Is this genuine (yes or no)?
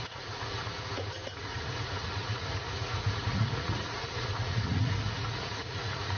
no